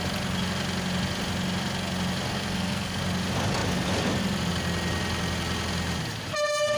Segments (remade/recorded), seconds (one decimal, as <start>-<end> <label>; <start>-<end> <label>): 0.0-2.3 recorded; 2.3-3.0 remade; 3.0-6.8 recorded